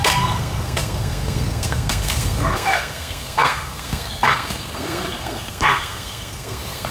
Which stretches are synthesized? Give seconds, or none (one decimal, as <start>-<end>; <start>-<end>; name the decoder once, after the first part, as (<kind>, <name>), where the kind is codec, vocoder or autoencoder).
0.0-6.9 (codec, SNAC)